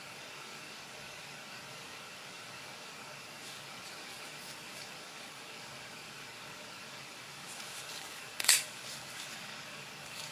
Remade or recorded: remade